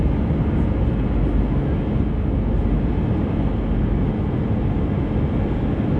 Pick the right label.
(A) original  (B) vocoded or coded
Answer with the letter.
A